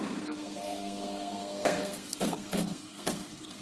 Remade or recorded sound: remade